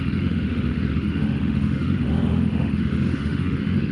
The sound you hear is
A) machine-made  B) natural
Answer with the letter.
A